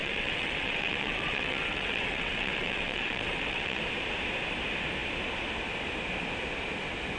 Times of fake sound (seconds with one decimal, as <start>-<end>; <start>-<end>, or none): 0.0-3.8